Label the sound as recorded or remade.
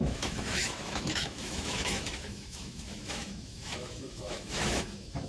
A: remade